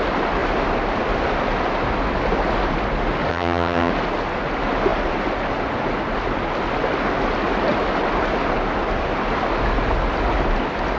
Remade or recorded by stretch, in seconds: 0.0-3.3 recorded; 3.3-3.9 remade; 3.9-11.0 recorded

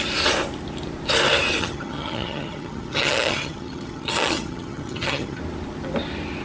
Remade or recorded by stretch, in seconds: 0.0-1.6 recorded; 1.6-5.4 remade; 5.4-6.4 recorded

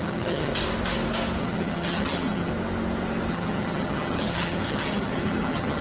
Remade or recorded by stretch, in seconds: 0.0-0.5 remade; 0.5-1.4 recorded; 1.4-2.5 remade; 2.5-3.3 recorded; 3.3-5.8 remade

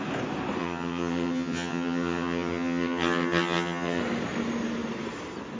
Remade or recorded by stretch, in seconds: 0.0-0.6 recorded; 0.6-4.0 remade; 4.0-5.6 recorded